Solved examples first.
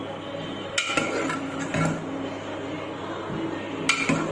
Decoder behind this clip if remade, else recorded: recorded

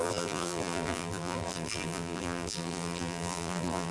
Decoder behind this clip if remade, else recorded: remade, vocoder, BigVGAN v2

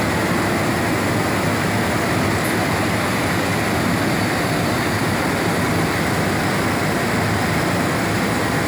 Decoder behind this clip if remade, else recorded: recorded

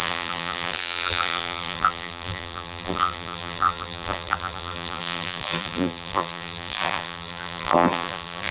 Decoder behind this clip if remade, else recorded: remade, vocoder, BigVGAN v2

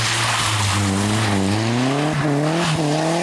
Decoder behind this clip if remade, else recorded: recorded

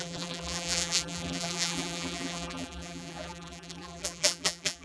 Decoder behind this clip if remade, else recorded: remade, vocoder, BigVGAN v2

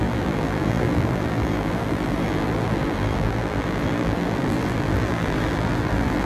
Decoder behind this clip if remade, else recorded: remade, vocoder, BigVGAN v2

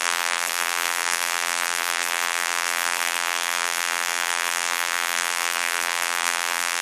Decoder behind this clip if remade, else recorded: remade, vocoder, BigVGAN v2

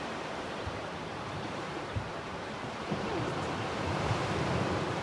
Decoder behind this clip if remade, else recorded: remade, vocoder, BigVGAN v2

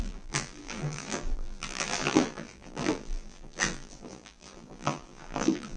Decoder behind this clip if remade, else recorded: remade, vocoder, BigVGAN v2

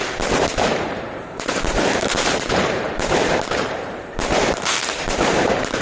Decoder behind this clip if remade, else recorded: remade, vocoder, BigVGAN v2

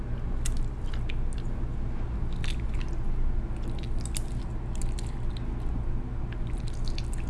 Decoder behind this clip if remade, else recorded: recorded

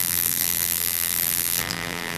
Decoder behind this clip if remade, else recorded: remade, vocoder, BigVGAN v2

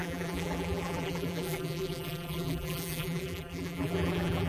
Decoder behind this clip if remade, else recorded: remade, vocoder, BigVGAN v2